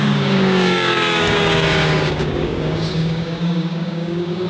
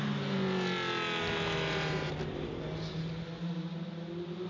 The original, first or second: second